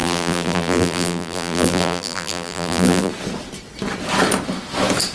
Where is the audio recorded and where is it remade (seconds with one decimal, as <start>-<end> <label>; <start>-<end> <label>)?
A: 0.0-3.1 remade; 3.1-5.1 recorded